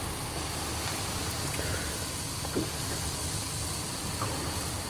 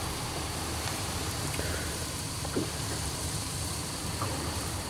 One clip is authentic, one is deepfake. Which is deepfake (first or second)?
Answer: second